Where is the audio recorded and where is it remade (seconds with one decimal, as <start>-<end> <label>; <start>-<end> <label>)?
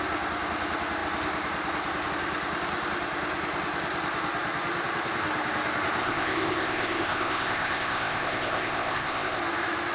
0.0-6.0 recorded; 6.0-9.4 remade; 9.4-9.9 recorded